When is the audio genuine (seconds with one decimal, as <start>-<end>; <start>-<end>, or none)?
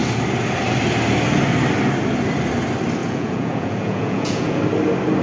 0.0-3.0; 4.6-5.2